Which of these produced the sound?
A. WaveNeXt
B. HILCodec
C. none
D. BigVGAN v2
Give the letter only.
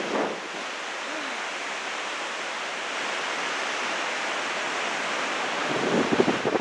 C